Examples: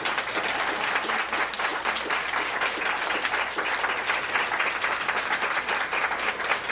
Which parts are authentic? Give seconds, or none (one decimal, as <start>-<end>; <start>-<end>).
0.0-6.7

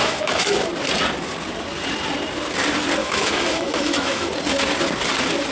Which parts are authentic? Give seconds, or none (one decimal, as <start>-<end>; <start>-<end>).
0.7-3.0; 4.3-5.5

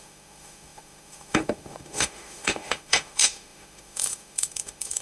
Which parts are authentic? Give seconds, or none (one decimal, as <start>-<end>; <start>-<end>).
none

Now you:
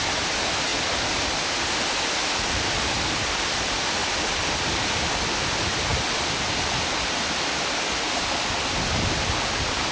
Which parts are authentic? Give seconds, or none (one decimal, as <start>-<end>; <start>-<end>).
0.0-9.9

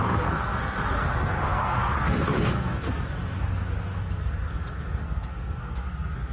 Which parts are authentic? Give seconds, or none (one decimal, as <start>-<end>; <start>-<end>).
none

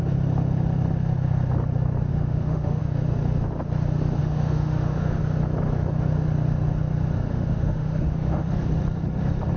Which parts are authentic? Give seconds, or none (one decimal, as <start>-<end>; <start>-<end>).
0.0-2.1; 2.8-4.2; 5.2-7.3; 8.5-9.6

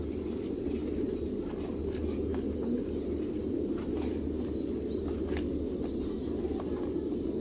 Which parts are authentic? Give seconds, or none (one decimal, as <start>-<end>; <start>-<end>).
0.0-7.4

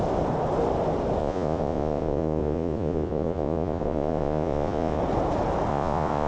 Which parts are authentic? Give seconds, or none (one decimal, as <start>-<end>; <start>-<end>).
0.0-1.2; 5.0-5.7